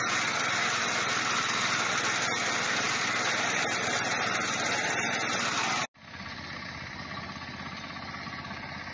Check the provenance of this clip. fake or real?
real